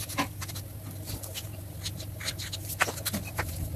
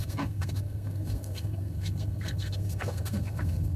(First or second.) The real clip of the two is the first